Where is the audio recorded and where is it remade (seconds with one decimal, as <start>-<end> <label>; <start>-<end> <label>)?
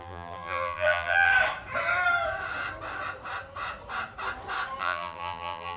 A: 0.0-1.3 remade; 1.3-4.8 recorded; 4.8-5.8 remade